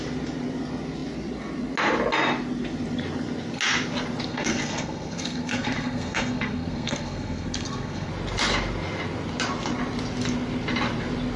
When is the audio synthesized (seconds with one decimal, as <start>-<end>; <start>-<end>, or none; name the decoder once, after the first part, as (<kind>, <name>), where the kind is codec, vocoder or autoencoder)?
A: 4.3-8.1 (codec, SNAC)

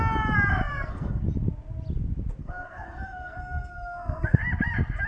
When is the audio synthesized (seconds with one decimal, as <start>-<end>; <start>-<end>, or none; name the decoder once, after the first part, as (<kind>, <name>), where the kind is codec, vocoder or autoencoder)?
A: 0.7-1.2 (codec, SNAC); 2.4-4.4

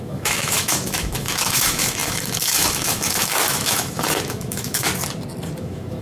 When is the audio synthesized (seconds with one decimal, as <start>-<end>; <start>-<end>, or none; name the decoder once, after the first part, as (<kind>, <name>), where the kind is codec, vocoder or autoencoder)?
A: 0.0-4.9 (autoencoder, DAC-VAE); 5.6-6.0

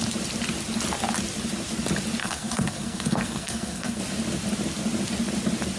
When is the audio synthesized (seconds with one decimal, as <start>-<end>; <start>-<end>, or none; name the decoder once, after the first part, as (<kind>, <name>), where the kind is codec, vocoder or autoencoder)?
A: 2.2-4.0 (codec, SNAC)

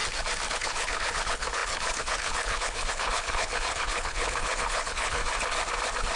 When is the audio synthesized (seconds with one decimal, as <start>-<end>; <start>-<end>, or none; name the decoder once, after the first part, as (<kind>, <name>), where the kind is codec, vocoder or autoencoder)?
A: 0.5-5.2 (codec, HILCodec)